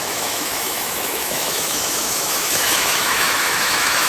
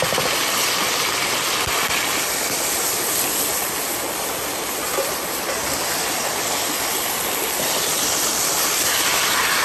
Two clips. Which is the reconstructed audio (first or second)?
first